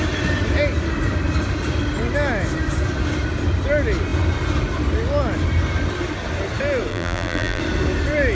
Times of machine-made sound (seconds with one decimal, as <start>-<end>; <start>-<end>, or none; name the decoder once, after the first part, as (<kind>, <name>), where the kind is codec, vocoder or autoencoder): 6.9-7.6 (vocoder, BigVGAN v2)